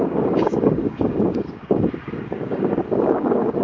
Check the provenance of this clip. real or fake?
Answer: fake